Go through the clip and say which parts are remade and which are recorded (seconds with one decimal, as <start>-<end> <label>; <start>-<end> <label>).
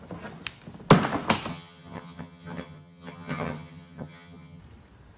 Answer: 0.0-1.5 recorded; 1.5-4.6 remade; 4.6-5.2 recorded